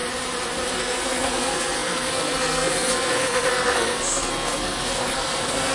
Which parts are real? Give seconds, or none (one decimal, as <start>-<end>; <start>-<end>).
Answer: 0.0-0.8

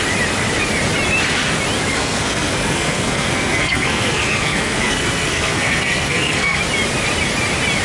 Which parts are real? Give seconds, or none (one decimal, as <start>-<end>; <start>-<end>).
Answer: 0.0-1.9; 6.6-7.8

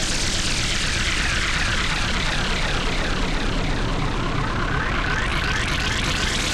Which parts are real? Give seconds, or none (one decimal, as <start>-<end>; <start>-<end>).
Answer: 0.0-6.5

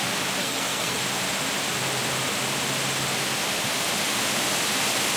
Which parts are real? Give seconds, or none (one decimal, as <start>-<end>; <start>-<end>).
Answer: 0.0-0.4; 1.0-5.2

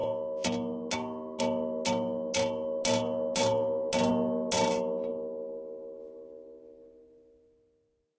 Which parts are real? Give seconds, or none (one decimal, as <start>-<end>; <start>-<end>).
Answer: 0.0-8.2

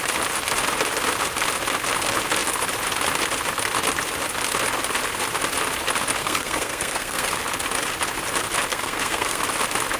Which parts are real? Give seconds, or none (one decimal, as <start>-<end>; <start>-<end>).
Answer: 0.0-6.2; 7.4-8.7; 9.4-10.0